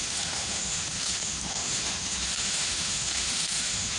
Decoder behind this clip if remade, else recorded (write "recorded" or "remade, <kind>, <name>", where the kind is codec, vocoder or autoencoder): remade, autoencoder, DAC-VAE